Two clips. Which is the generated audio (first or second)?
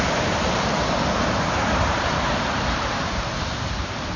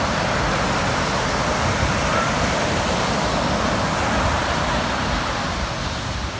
first